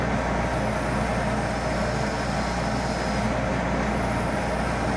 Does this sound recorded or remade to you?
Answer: recorded